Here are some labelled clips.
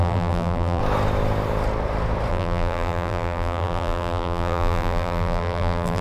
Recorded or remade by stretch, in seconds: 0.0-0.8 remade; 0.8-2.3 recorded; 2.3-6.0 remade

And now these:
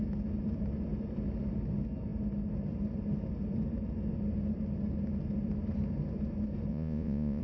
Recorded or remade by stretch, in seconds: 0.0-6.7 recorded; 6.7-7.4 remade

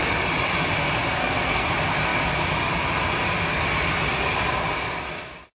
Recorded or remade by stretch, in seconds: 0.0-1.2 recorded; 1.2-1.7 remade; 1.7-5.6 recorded

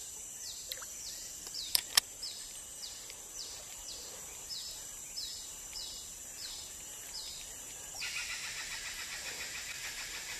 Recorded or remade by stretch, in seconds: 0.0-8.2 remade; 8.2-9.0 recorded; 9.0-10.4 remade

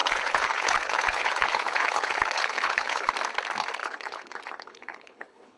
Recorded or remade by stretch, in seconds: 0.0-3.1 remade; 3.1-3.8 recorded; 3.8-5.6 remade

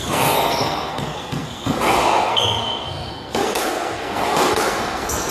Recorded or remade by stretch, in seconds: 0.0-5.3 remade

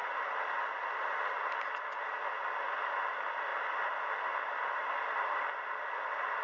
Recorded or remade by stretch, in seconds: 0.0-6.4 recorded